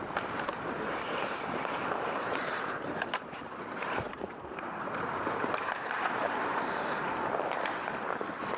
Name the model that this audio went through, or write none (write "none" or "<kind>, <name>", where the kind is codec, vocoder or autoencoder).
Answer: vocoder, BigVGAN v2